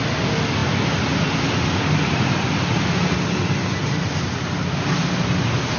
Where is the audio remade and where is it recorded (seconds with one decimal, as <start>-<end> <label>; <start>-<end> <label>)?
0.0-5.8 recorded